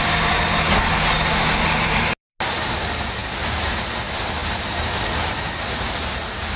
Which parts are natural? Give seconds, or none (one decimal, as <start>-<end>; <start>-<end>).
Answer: 0.0-6.6